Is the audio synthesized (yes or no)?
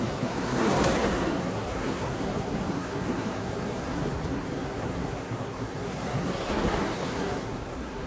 yes